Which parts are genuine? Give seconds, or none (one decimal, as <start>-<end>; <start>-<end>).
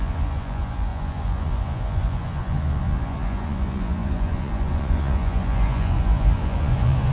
none